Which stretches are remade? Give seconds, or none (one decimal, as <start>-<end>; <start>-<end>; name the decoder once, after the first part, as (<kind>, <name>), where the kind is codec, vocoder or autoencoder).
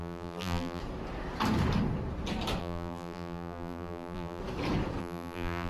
0.0-0.8 (vocoder, BigVGAN v2); 2.6-4.4; 5.0-5.7